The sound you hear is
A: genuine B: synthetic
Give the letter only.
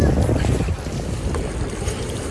A